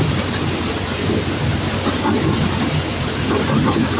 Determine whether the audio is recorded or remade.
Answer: remade